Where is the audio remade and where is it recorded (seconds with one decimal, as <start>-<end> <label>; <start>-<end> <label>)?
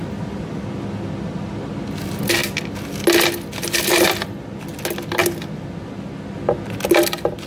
0.0-7.5 recorded